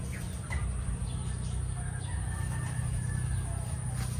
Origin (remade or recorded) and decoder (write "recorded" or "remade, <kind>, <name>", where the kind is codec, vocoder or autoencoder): recorded